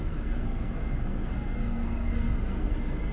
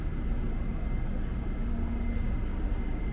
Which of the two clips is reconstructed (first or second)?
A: first